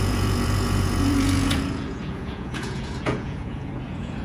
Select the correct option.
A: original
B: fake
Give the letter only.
B